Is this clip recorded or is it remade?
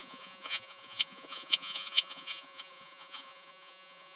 remade